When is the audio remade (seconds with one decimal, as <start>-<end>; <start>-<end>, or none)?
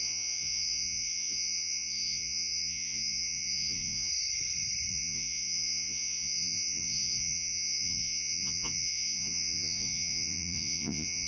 0.0-4.1; 4.9-11.3